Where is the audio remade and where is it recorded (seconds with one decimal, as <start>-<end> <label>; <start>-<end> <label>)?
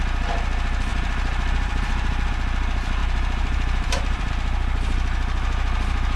0.0-0.9 recorded; 0.9-2.3 remade; 2.3-3.0 recorded; 3.0-4.3 remade; 4.3-6.2 recorded